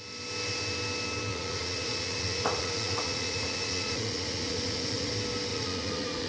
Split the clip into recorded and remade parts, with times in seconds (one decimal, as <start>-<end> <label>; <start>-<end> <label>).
0.0-1.3 recorded; 1.3-5.1 remade; 5.1-5.5 recorded; 5.5-6.3 remade